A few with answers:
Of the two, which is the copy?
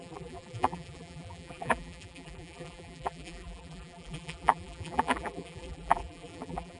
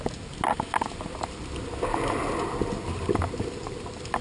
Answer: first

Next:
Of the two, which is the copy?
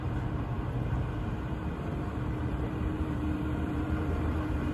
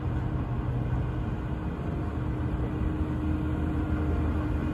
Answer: first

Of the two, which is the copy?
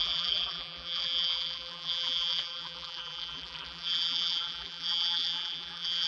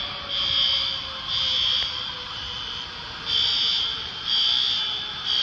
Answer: first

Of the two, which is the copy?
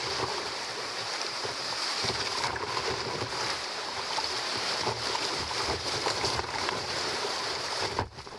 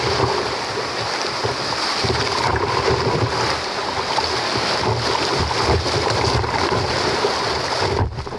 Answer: first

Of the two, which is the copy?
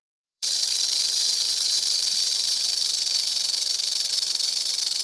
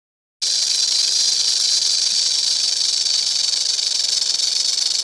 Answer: first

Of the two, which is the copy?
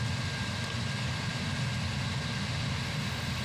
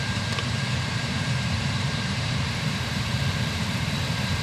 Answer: second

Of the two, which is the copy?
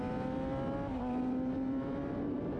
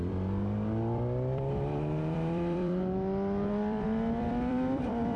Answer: second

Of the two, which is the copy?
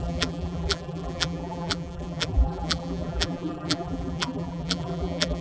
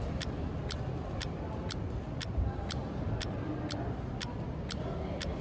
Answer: first